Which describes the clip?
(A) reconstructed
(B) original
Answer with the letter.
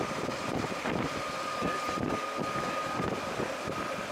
A